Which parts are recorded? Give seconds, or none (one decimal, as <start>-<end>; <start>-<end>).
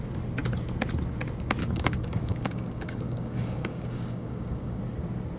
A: 0.0-1.6; 4.8-5.4